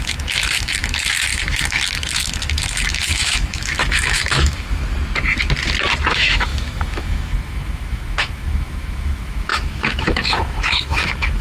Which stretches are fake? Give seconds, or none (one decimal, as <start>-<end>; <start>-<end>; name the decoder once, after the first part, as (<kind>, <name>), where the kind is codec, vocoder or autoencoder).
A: 0.0-4.8 (autoencoder, DAC-VAE); 6.1-11.4